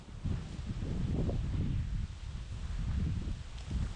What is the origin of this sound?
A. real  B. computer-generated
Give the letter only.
A